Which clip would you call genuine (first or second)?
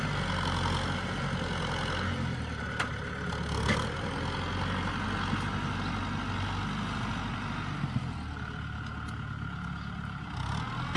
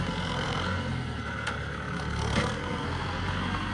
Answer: first